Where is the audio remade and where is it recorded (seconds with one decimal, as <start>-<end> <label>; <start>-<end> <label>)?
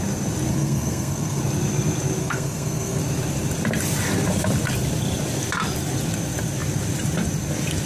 0.0-0.5 recorded; 0.5-1.4 remade; 1.4-2.2 recorded; 2.2-3.0 remade; 3.0-7.9 recorded